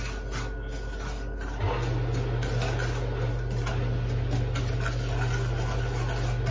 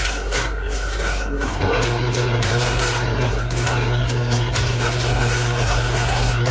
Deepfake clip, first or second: second